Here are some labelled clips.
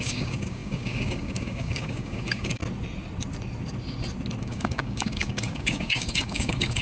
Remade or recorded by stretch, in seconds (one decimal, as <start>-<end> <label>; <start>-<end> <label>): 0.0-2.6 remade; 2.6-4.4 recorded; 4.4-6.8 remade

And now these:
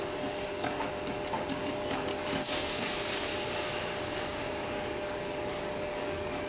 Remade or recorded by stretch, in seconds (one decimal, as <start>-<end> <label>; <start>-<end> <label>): 0.0-0.9 remade; 0.9-1.5 recorded; 1.5-3.3 remade; 3.3-4.0 recorded; 4.0-6.5 remade

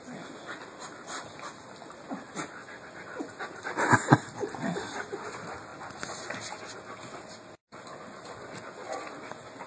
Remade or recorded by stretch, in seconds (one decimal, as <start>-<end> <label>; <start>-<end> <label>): 0.0-9.7 recorded

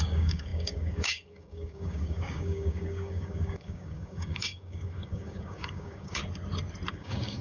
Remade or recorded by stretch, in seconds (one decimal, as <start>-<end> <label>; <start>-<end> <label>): 0.0-6.2 remade; 6.2-6.9 recorded; 6.9-7.4 remade